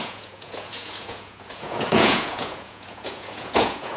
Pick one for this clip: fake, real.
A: fake